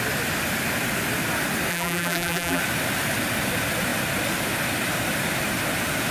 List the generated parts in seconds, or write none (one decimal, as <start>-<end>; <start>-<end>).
1.7-2.6